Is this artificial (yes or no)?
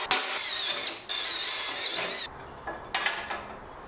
no